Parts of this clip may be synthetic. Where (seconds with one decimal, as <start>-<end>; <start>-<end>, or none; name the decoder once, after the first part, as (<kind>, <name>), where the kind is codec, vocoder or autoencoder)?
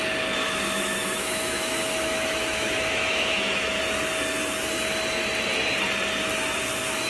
0.4-3.8 (autoencoder, DAC-VAE)